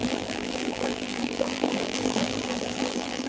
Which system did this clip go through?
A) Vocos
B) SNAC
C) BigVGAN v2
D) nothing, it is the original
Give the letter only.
C